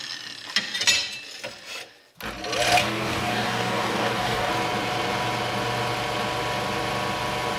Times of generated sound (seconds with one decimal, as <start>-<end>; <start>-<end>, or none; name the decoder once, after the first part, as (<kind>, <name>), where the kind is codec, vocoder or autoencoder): 2.8-4.5 (codec, DAC)